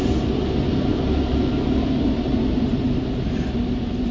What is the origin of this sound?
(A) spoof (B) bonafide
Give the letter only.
B